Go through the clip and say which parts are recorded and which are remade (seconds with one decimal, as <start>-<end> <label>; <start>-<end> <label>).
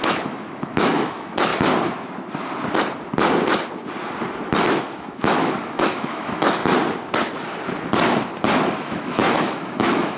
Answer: 0.0-1.5 remade; 1.5-4.8 recorded; 4.8-6.6 remade; 6.6-8.8 recorded; 8.8-10.2 remade